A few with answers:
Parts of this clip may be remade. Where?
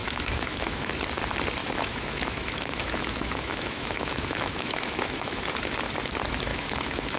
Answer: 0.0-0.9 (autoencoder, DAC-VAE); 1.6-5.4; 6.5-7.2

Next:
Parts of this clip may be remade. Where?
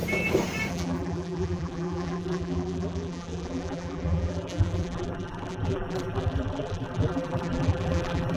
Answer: 0.7-8.4 (vocoder, BigVGAN v2)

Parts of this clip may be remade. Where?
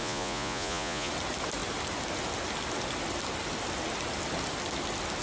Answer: 0.0-1.1 (vocoder, Vocos)